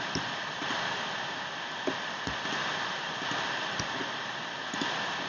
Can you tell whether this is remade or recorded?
remade